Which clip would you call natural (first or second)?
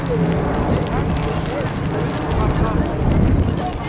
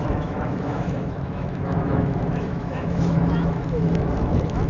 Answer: first